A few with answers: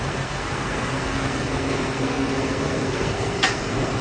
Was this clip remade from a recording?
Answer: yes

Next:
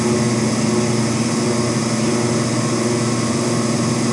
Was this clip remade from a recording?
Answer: no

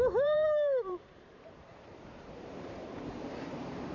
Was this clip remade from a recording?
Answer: yes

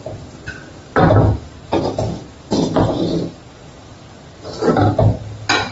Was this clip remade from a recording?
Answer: no